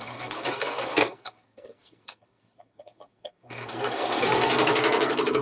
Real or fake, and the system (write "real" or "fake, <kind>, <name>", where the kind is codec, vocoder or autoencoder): fake, codec, SNAC